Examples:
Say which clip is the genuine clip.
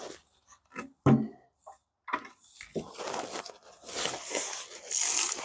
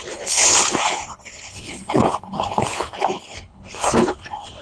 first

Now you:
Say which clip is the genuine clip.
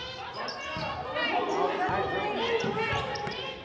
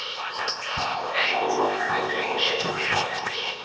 first